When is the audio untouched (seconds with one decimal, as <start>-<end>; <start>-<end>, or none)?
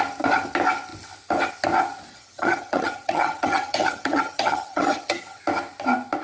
0.0-2.1; 5.4-6.2